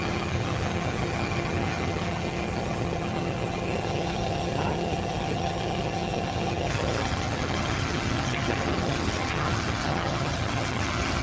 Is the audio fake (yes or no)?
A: yes